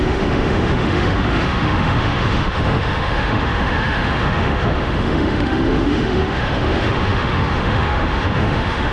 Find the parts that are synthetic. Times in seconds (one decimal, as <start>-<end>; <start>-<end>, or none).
0.0-8.9